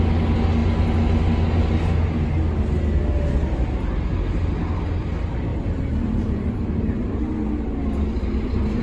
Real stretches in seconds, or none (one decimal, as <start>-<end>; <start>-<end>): 0.0-5.5; 6.5-8.8